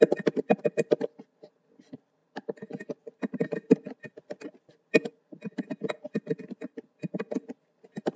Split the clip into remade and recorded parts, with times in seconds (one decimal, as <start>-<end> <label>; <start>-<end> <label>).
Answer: 0.0-8.2 recorded